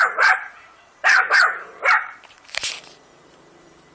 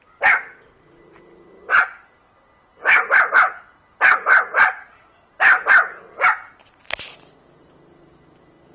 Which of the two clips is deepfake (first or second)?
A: first